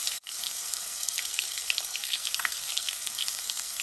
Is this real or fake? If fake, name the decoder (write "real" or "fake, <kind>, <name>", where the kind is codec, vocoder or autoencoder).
fake, codec, SNAC